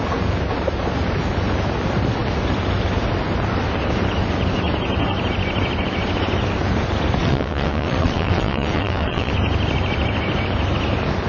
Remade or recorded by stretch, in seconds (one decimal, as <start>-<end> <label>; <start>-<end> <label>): 0.0-7.2 recorded; 7.2-9.3 remade; 9.3-11.3 recorded